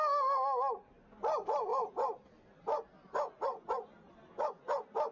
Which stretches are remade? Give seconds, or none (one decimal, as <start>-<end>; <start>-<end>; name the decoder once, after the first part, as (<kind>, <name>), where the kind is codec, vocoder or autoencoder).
none